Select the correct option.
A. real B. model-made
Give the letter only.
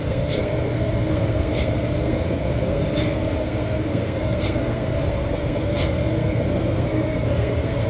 B